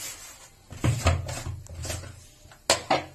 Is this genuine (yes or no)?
yes